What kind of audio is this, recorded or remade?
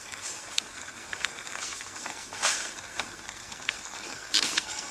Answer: remade